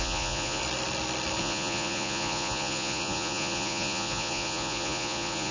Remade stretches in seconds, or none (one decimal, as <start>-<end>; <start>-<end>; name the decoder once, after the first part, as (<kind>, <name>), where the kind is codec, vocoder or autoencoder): 0.0-0.6 (vocoder, Vocos); 1.4-5.5